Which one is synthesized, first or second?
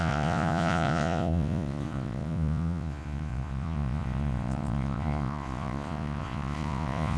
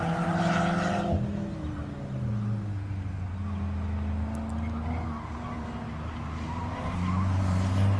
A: first